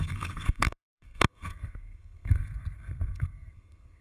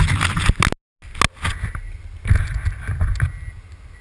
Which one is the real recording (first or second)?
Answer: second